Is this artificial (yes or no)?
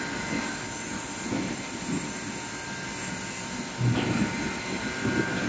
no